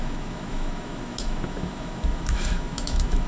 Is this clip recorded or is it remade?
remade